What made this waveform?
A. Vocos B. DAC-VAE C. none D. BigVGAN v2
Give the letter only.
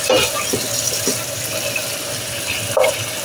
C